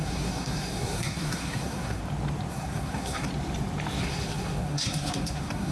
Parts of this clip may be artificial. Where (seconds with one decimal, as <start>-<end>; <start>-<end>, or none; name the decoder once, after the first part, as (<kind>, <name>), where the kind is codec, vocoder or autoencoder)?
0.0-2.0 (codec, SNAC); 2.5-3.3; 4.0-5.7